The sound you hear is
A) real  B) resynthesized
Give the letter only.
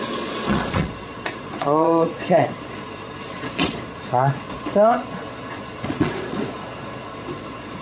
B